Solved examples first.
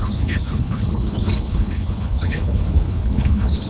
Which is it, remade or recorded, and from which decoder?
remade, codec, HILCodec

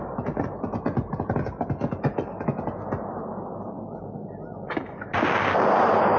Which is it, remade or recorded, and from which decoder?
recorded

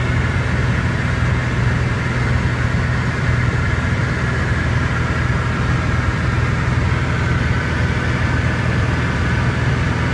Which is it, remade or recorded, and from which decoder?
recorded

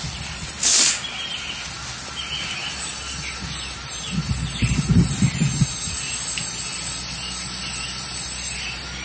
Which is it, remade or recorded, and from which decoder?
recorded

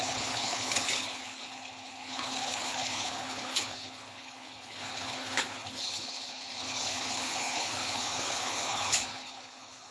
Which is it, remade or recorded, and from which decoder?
remade, codec, HILCodec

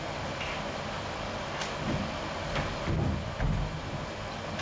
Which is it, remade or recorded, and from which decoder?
recorded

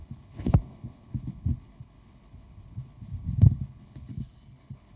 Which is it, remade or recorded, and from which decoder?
remade, codec, HILCodec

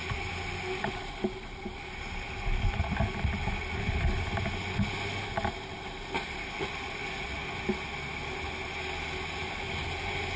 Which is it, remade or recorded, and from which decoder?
recorded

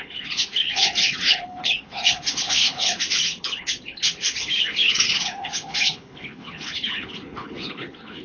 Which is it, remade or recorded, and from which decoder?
remade, codec, HILCodec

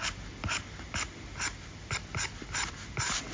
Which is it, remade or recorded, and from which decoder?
recorded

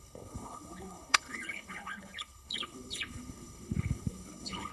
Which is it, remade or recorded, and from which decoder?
remade, codec, HILCodec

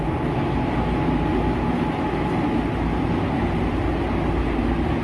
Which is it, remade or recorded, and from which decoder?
recorded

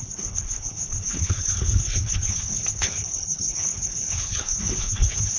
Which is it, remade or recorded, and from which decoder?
remade, codec, HILCodec